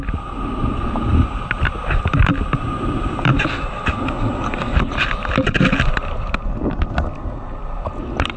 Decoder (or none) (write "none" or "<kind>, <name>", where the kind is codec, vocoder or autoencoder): none